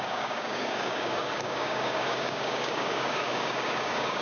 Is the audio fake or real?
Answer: fake